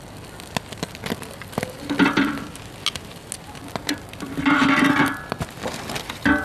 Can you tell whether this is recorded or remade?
recorded